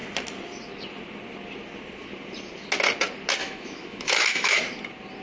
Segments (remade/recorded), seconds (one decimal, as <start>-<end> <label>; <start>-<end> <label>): 0.0-3.4 recorded; 3.4-4.6 remade; 4.6-5.2 recorded